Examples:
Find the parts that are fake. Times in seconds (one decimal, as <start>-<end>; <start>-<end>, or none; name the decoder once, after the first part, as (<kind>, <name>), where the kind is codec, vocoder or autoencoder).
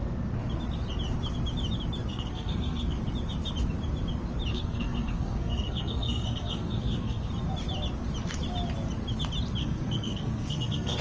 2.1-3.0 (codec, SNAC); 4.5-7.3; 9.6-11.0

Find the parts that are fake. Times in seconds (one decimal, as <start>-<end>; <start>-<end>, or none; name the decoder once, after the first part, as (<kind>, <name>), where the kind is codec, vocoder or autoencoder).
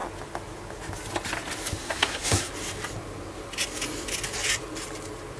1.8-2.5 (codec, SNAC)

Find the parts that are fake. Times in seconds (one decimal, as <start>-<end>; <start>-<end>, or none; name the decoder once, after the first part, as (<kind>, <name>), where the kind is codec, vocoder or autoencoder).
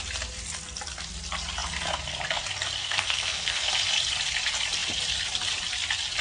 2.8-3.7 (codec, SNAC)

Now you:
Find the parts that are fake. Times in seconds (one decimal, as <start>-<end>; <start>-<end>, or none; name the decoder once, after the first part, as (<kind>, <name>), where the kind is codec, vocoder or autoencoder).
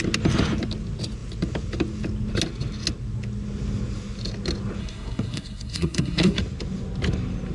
4.8-6.4 (codec, SNAC)